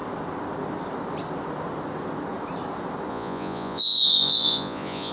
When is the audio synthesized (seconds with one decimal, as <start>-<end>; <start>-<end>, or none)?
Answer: 3.1-5.1